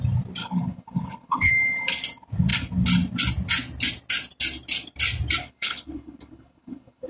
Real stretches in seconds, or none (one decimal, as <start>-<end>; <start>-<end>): 0.0-0.4; 1.5-5.4

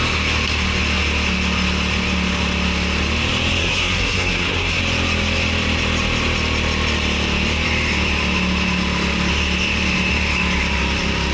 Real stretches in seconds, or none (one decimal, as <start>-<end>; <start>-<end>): 0.0-3.6; 4.8-11.3

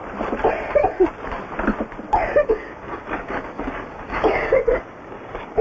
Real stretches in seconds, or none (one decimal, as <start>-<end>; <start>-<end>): 0.0-2.1

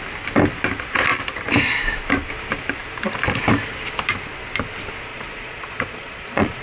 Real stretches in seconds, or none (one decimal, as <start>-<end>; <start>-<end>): 0.0-5.1